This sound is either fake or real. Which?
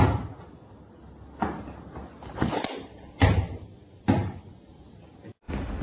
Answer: real